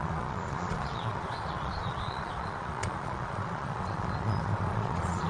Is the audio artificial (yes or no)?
yes